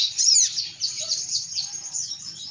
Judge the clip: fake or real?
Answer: real